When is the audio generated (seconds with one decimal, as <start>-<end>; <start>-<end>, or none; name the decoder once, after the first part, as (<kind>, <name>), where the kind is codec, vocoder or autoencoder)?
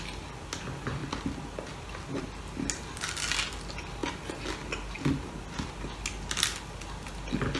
none